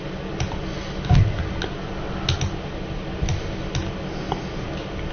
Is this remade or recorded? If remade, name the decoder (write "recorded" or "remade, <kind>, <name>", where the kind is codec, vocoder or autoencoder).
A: recorded